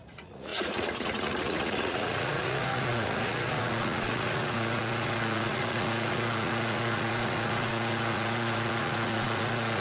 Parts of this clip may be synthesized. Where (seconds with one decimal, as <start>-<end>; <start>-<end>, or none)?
0.0-9.8